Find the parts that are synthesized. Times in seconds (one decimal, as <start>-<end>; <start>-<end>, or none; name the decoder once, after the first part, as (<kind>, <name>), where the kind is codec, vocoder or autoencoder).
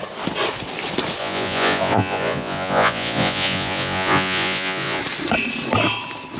1.2-5.0 (vocoder, Vocos)